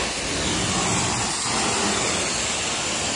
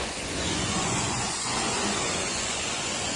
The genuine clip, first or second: first